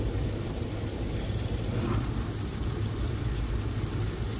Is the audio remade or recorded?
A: recorded